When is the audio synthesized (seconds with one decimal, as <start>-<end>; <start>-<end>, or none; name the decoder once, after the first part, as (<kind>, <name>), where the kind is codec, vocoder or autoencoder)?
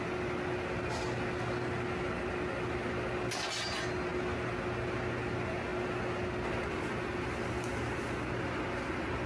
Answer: none